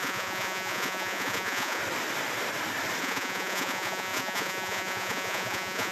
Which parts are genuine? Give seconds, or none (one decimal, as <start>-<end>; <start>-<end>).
1.8-3.0